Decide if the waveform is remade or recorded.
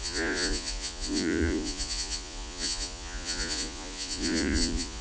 remade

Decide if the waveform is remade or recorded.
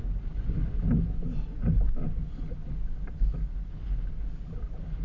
recorded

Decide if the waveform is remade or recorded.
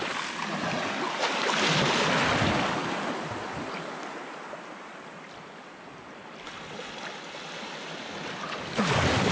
recorded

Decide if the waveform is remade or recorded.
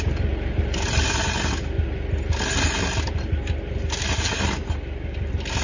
recorded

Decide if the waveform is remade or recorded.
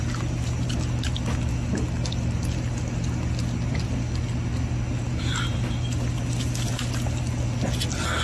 recorded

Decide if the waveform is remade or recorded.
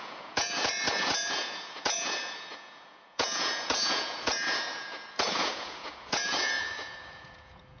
remade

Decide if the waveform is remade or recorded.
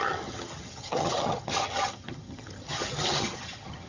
remade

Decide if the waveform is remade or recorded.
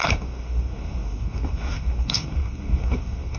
remade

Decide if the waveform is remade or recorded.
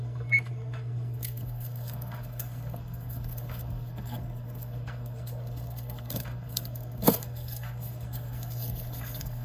remade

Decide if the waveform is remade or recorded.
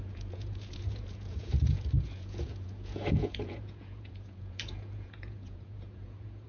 remade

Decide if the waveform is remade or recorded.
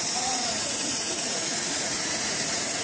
remade